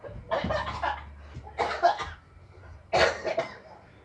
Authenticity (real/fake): real